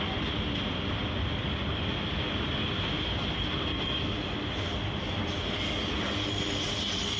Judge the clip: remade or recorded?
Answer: recorded